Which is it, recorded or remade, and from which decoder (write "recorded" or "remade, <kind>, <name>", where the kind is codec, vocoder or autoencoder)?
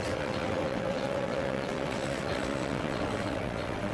remade, vocoder, WaveNeXt